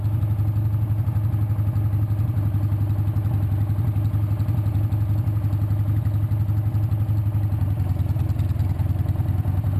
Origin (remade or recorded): recorded